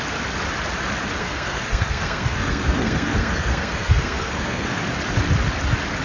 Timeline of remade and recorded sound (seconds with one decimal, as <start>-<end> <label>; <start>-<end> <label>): 0.0-1.2 recorded; 1.2-4.8 remade; 4.8-6.0 recorded